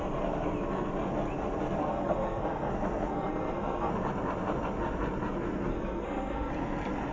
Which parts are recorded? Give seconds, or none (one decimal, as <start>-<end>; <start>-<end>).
0.0-1.9; 2.7-3.1; 3.9-5.7; 6.5-7.1